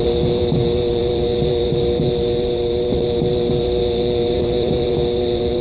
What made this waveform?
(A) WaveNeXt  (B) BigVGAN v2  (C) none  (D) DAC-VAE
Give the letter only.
B